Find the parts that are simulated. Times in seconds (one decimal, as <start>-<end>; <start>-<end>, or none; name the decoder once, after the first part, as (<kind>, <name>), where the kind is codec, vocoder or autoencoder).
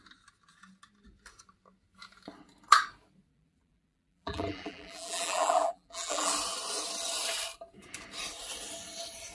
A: 3.3-6.3 (vocoder, BigVGAN v2)